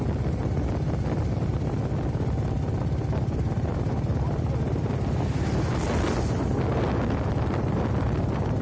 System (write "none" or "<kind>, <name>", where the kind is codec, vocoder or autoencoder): none